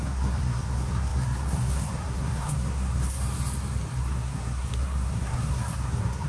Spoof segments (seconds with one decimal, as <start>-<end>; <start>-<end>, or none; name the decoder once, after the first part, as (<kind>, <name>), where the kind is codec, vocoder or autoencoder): 0.0-3.2 (codec, SNAC); 4.0-6.3

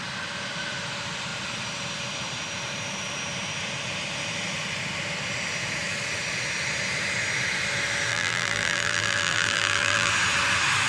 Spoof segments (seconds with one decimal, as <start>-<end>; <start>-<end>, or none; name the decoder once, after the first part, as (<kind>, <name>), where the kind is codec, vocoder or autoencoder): 8.1-10.1 (vocoder, BigVGAN v2)

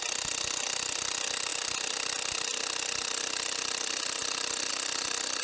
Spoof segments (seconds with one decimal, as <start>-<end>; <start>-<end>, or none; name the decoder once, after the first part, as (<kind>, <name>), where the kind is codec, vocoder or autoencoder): none

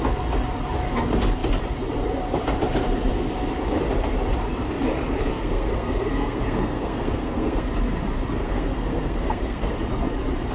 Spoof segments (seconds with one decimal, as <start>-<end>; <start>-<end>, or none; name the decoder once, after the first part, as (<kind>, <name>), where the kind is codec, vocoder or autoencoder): 5.3-7.7 (codec, SNAC); 8.4-9.7

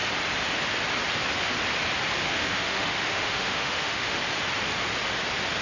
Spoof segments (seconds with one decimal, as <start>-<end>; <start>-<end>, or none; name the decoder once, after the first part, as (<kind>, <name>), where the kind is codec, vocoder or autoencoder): 2.3-4.2 (autoencoder, DAC-VAE)